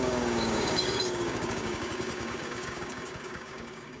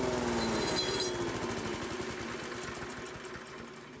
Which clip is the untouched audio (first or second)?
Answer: second